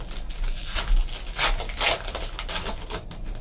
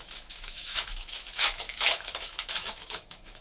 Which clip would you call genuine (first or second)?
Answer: first